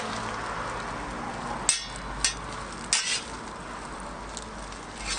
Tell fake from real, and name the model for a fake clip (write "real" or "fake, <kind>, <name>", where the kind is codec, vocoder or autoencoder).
real